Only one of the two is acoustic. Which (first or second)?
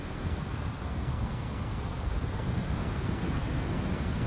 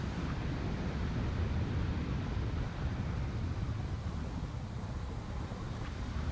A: second